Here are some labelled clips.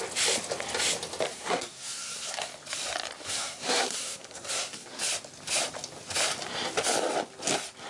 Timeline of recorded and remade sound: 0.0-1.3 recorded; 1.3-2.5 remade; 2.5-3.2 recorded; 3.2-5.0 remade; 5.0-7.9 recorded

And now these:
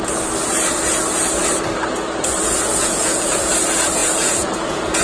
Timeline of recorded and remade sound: 0.0-2.7 recorded; 2.7-3.5 remade; 3.5-4.0 recorded; 4.0-5.0 remade